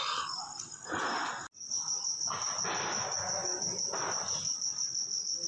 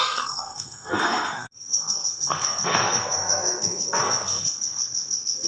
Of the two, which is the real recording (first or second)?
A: first